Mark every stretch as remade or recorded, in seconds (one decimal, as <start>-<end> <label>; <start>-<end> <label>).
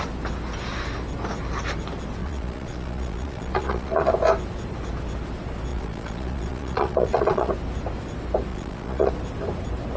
0.0-2.2 recorded; 2.2-4.1 remade; 4.1-5.7 recorded; 5.7-7.5 remade; 7.5-8.5 recorded; 8.5-9.1 remade; 9.1-10.0 recorded